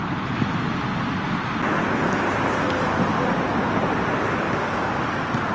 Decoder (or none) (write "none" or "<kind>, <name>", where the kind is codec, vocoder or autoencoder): none